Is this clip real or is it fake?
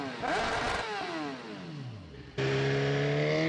real